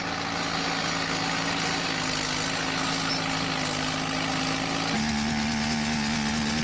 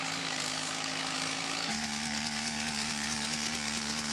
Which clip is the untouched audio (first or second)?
first